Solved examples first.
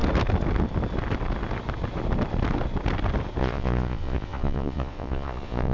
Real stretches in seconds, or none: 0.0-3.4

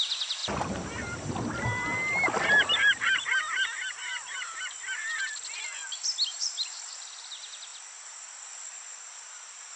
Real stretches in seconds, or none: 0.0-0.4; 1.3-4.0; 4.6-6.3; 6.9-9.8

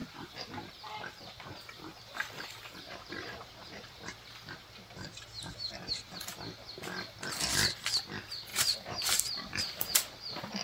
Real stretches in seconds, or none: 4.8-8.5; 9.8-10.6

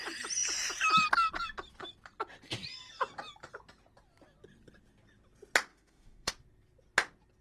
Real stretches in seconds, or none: 0.0-5.7; 6.3-7.4

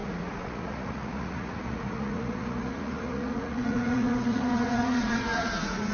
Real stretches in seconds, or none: none

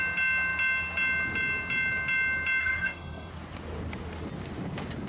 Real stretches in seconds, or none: 0.0-2.6; 3.3-5.1

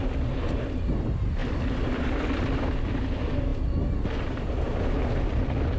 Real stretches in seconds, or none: 0.0-1.4; 2.0-5.8